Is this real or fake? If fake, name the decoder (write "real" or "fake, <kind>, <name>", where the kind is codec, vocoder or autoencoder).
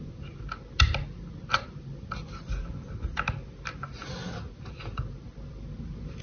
real